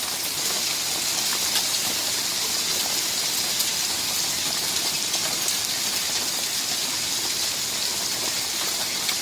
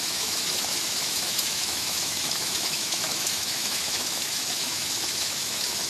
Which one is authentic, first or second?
first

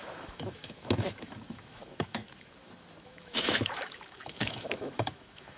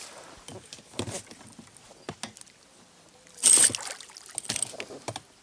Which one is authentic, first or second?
second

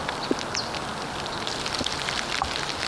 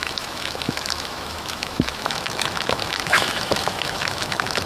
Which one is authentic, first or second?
first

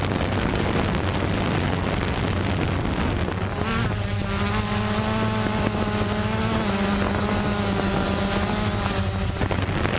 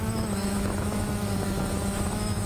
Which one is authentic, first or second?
first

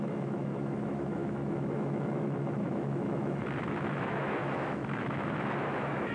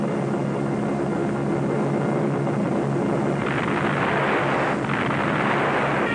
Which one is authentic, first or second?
second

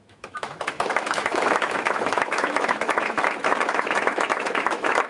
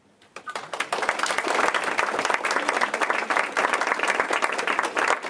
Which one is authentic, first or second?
second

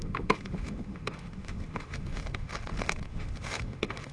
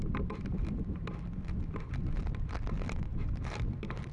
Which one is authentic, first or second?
second